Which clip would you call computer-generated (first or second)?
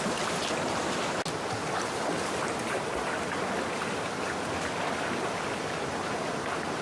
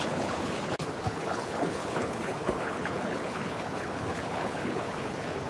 second